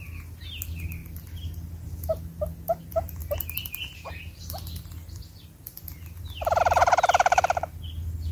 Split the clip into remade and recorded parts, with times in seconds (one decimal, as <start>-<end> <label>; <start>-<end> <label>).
0.0-8.3 recorded

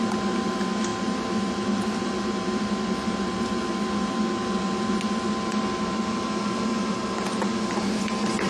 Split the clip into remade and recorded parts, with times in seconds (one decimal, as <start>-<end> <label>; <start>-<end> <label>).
0.0-8.5 recorded

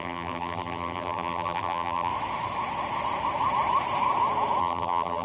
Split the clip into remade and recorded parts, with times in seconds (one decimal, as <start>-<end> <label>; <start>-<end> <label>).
0.0-2.1 remade; 2.1-4.6 recorded; 4.6-5.2 remade

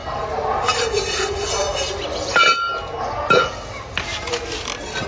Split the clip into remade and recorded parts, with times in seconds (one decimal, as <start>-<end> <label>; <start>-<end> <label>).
0.0-5.1 recorded